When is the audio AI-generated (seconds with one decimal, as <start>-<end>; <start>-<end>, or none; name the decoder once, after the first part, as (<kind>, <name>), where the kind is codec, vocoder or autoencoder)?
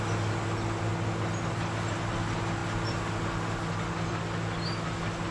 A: none